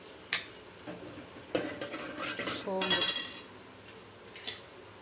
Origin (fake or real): real